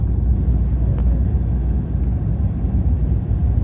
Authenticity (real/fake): real